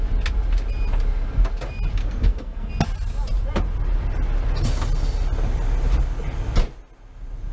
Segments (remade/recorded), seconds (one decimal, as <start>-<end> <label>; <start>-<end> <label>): 0.0-2.0 recorded; 2.0-2.7 remade; 2.7-7.5 recorded